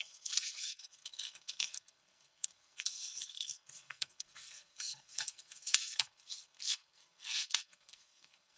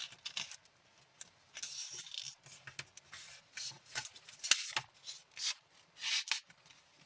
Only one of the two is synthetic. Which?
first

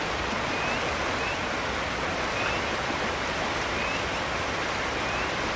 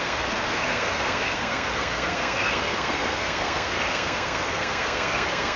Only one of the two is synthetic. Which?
second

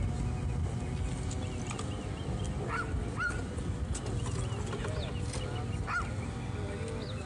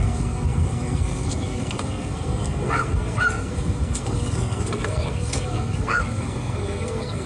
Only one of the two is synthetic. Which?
second